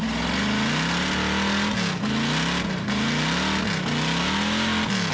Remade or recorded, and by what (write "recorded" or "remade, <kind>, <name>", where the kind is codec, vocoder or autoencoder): recorded